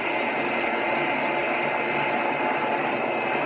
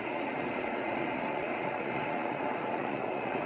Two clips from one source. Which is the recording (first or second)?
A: first